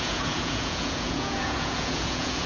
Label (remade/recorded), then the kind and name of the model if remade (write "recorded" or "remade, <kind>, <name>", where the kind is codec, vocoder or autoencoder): remade, vocoder, Vocos